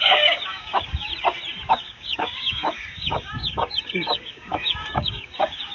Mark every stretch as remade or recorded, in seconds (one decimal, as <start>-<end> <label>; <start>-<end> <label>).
0.0-1.1 remade; 1.1-1.7 recorded; 1.7-5.7 remade